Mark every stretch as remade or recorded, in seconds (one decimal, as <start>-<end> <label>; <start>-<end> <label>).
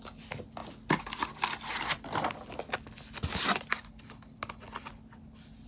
0.0-5.7 recorded